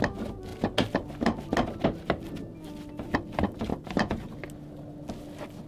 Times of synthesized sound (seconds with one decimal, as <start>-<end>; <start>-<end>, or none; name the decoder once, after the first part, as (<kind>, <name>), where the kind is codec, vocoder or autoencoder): 3.7-4.3 (vocoder, BigVGAN v2)